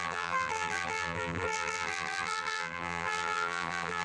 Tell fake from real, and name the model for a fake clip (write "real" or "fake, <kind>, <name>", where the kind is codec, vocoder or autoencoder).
fake, vocoder, BigVGAN v2